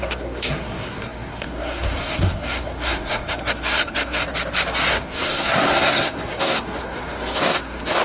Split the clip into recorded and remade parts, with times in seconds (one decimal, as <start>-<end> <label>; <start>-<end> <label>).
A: 0.0-4.2 remade; 4.2-4.9 recorded; 4.9-8.0 remade